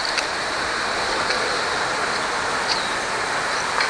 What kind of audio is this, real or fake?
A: real